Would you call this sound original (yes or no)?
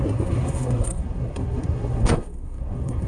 no